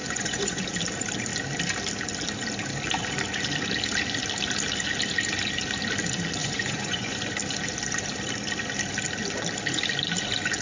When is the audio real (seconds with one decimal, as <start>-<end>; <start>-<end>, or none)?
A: 0.6-6.4; 7.2-10.6